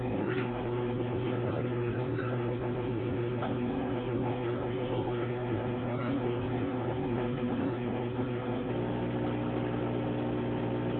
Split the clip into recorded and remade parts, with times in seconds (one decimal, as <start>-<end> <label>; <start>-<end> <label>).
0.0-8.7 remade; 8.7-11.0 recorded